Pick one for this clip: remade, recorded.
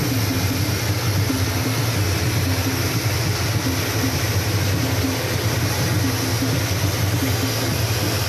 recorded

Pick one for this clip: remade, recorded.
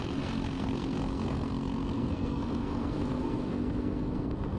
remade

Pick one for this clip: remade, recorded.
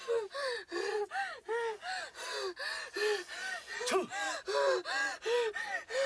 recorded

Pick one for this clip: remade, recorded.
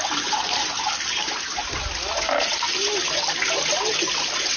recorded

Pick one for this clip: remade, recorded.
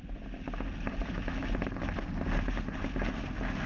recorded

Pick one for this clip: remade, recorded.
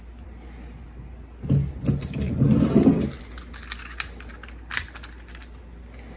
recorded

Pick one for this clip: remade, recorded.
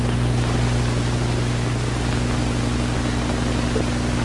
recorded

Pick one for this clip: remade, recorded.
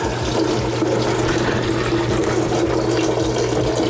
recorded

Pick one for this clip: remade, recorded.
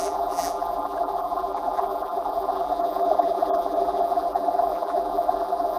remade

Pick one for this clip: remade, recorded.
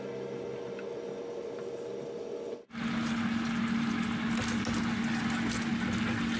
recorded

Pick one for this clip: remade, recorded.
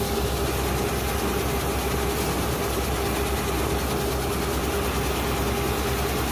recorded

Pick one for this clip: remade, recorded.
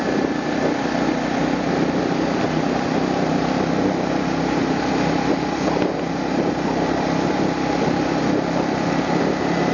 recorded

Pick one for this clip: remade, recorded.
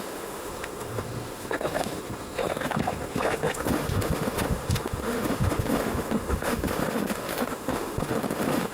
remade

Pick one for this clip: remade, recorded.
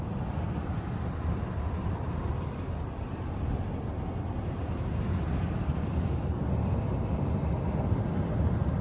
recorded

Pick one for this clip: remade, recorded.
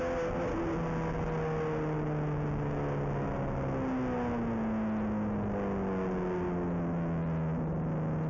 recorded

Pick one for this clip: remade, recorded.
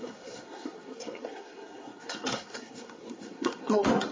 remade